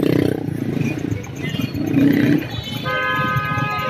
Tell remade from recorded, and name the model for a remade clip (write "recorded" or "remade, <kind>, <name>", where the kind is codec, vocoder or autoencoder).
recorded